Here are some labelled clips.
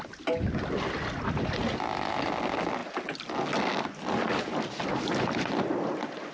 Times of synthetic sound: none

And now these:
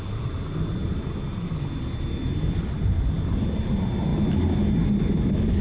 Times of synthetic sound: none